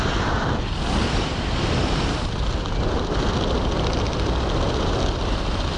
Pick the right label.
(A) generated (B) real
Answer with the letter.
B